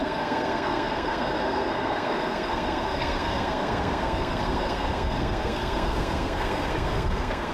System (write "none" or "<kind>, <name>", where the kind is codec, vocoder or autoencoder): codec, SNAC